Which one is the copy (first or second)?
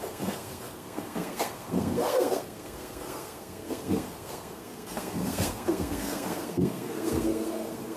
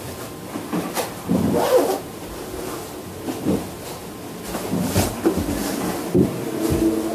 first